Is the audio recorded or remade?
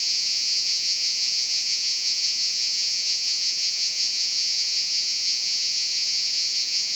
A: remade